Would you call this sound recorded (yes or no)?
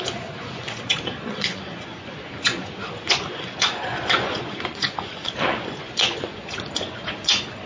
no